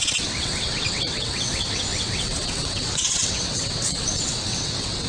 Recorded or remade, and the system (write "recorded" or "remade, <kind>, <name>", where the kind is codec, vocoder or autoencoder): remade, vocoder, WaveNeXt